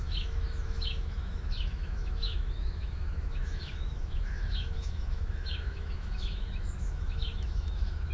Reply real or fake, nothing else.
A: fake